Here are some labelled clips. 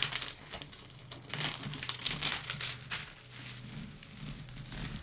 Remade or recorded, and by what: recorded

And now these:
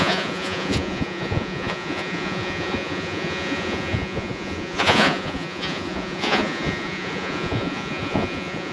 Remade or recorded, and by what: remade, vocoder, Vocos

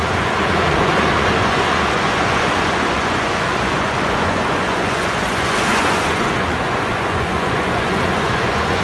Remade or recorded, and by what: remade, vocoder, Vocos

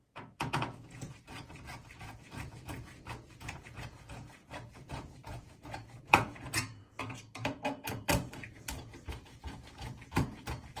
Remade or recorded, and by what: remade, vocoder, Vocos